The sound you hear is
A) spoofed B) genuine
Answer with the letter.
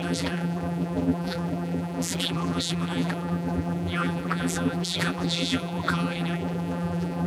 A